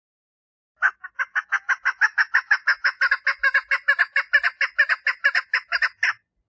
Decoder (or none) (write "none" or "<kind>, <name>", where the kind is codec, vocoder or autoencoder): none